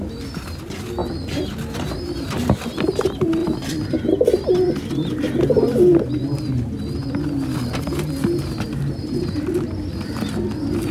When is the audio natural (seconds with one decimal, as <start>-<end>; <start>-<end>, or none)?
0.0-3.4; 4.5-10.9